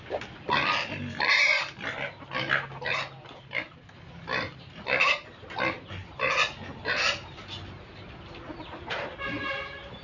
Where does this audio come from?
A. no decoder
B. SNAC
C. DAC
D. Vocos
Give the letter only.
A